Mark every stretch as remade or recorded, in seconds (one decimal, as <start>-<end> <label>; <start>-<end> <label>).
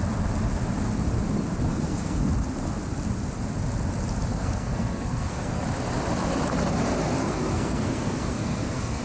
0.0-1.7 recorded; 1.7-2.3 remade; 2.3-4.3 recorded; 4.3-5.6 remade; 5.6-7.2 recorded; 7.2-9.0 remade